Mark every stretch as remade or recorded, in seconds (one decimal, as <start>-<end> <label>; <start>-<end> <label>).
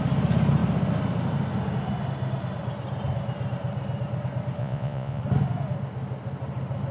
0.0-4.6 recorded; 4.6-5.2 remade; 5.2-6.9 recorded